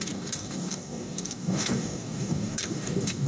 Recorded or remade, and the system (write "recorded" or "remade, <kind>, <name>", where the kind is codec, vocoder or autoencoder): remade, codec, DAC